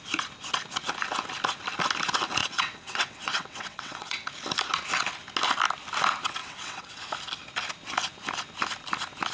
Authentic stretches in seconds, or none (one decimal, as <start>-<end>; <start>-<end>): 0.0-2.4; 4.3-6.4; 7.0-9.3